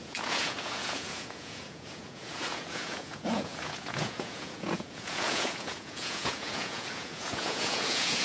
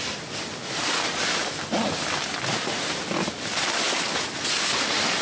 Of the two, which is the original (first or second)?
second